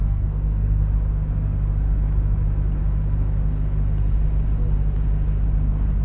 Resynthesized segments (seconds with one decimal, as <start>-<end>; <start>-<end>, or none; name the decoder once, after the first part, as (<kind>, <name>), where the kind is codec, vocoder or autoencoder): 0.0-0.8 (codec, SNAC)